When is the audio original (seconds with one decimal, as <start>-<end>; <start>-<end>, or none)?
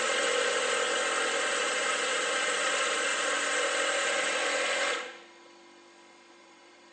0.5-1.5; 3.1-6.3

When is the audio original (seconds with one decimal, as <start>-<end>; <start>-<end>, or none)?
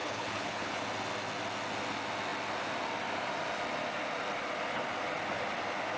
0.8-6.0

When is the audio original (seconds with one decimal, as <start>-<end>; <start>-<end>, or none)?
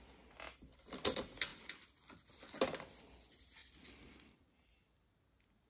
0.0-5.7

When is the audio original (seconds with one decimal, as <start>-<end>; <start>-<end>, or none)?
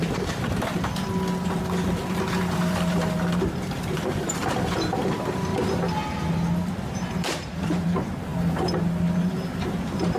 1.0-2.0; 5.5-6.9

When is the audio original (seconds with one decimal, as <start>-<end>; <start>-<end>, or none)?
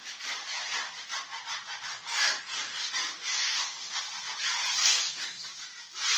0.0-1.9; 2.9-3.3; 4.0-4.8; 5.5-6.2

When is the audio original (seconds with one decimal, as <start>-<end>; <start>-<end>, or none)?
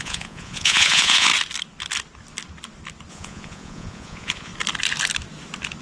1.3-3.1; 4.5-5.8